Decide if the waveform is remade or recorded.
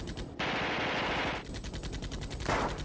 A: recorded